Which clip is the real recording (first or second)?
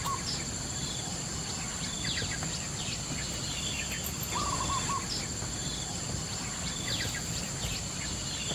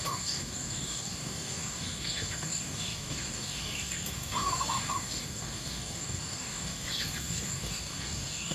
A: first